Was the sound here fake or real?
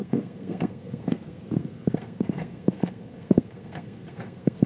fake